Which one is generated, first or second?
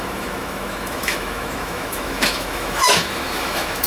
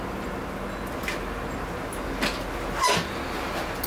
first